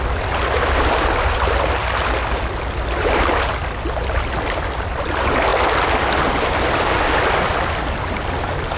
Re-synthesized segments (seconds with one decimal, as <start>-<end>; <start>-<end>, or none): none